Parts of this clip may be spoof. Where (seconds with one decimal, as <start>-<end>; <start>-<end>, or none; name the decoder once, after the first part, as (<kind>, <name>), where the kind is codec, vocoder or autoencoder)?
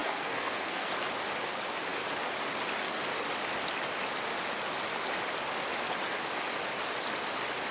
0.0-0.9 (codec, SNAC)